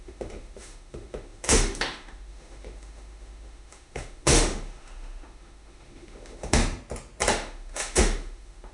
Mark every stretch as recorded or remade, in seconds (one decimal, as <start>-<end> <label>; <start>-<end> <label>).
0.0-6.6 remade; 6.6-7.3 recorded; 7.3-8.7 remade